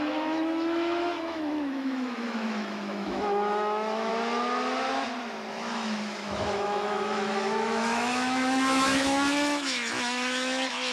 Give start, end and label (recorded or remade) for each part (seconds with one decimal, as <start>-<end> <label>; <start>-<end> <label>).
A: 0.0-4.1 remade; 4.1-5.5 recorded; 5.5-10.9 remade